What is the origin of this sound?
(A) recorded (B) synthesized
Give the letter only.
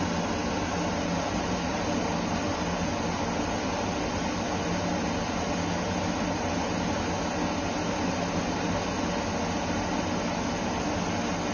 A